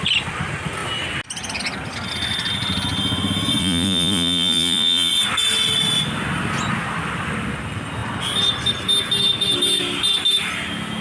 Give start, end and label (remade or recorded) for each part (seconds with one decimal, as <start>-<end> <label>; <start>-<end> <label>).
0.0-3.6 recorded; 3.6-5.1 remade; 5.1-11.0 recorded